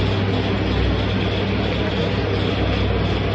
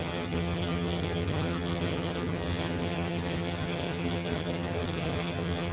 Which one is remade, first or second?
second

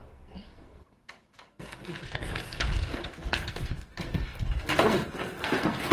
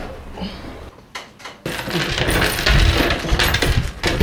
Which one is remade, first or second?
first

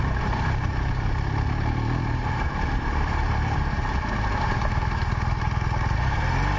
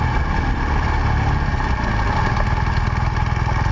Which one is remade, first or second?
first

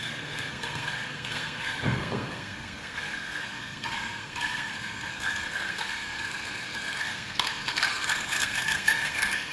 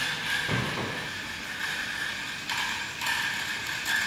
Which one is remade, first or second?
first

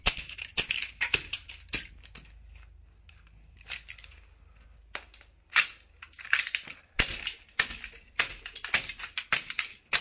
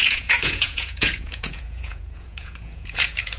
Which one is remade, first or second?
second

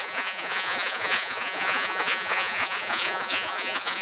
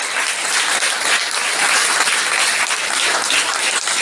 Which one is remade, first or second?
first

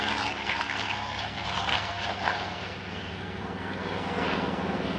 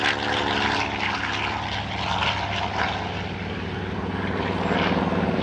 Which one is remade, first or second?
first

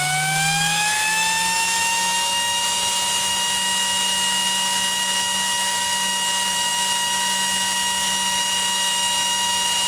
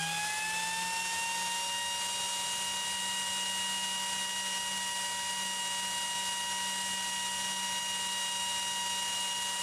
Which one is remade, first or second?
first